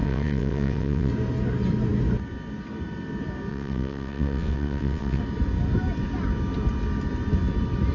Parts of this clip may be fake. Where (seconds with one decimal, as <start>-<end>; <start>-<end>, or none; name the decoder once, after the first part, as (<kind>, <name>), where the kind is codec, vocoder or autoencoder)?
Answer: 0.0-1.1 (vocoder, WaveNeXt); 3.5-5.2